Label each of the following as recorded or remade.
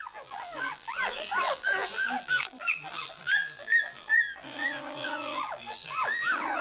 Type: remade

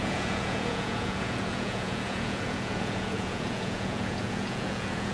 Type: remade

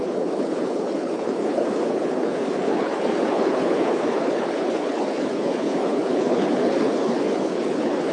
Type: remade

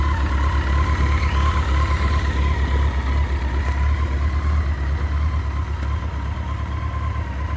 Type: recorded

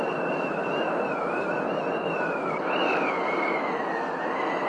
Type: recorded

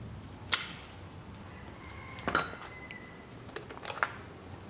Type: recorded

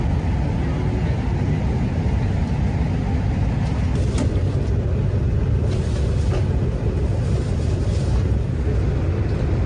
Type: recorded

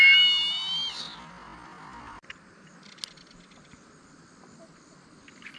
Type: recorded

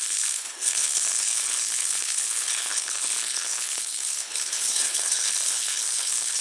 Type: remade